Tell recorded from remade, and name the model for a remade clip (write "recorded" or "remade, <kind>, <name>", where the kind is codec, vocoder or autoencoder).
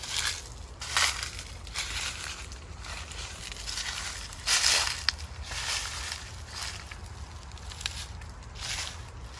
recorded